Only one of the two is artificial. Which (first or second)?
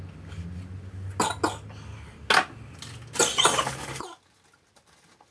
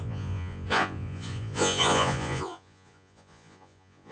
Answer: second